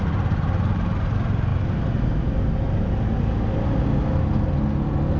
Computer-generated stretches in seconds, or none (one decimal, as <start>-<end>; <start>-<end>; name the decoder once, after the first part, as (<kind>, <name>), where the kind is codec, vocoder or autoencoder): none